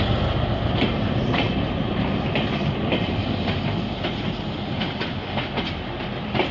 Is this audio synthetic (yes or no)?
no